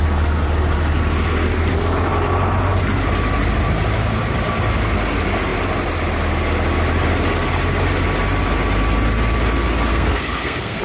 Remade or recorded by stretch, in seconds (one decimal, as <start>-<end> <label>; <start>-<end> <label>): 0.0-9.9 recorded; 9.9-10.8 remade